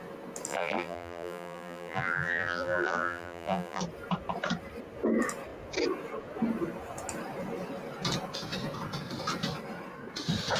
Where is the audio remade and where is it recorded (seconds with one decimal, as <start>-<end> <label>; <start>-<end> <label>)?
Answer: 0.0-0.5 recorded; 0.5-3.8 remade; 3.8-10.6 recorded